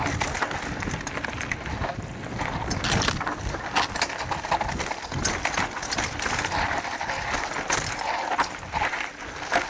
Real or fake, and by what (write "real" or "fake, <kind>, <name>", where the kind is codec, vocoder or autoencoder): real